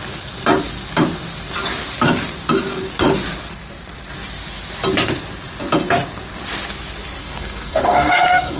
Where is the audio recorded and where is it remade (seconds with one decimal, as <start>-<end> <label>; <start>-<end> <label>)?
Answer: 0.0-7.2 recorded; 7.2-8.6 remade